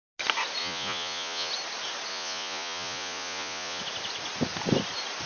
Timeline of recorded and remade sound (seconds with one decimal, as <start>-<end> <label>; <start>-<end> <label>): 0.0-0.6 recorded; 0.6-1.5 remade; 1.5-2.1 recorded; 2.1-3.8 remade; 3.8-5.3 recorded